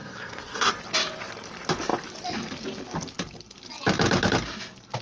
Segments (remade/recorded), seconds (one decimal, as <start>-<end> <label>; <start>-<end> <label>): 0.0-0.7 remade; 0.7-5.0 recorded